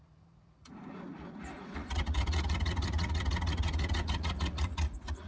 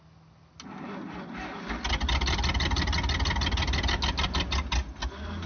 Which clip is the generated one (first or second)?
first